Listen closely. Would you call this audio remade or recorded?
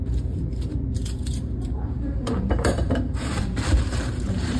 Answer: remade